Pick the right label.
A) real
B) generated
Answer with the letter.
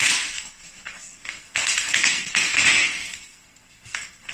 B